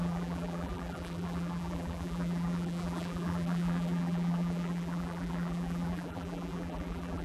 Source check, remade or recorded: remade